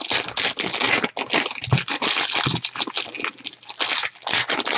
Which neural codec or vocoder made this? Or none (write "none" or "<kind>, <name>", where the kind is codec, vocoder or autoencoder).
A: none